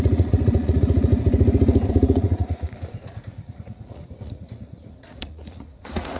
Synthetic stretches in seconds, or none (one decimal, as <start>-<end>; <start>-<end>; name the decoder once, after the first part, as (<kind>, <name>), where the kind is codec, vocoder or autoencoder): 0.0-1.1 (vocoder, Vocos); 1.9-6.2

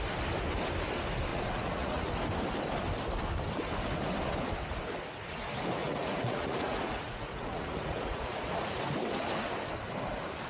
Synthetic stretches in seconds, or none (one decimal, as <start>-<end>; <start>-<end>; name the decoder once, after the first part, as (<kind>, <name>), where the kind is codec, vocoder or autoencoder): 1.3-2.1 (vocoder, Vocos); 5.8-8.8

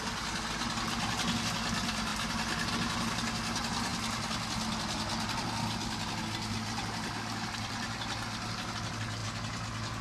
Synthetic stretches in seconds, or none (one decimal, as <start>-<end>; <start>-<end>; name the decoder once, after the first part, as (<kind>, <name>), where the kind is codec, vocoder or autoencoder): none

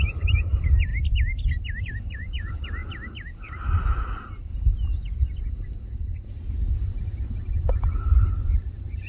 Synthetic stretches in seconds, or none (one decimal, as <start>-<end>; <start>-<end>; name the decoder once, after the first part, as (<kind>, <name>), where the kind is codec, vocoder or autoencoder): 0.0-0.9 (vocoder, BigVGAN v2); 1.8-2.8; 7.5-9.1

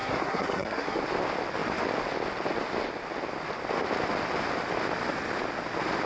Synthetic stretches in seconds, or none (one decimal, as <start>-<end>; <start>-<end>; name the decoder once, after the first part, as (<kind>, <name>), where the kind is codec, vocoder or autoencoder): 0.0-1.0 (codec, SNAC)